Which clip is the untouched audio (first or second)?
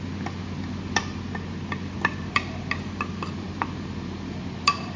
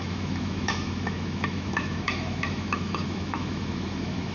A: first